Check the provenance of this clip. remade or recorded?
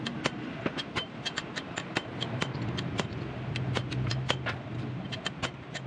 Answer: remade